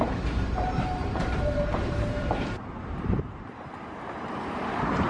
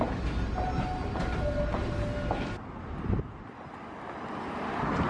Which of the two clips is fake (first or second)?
first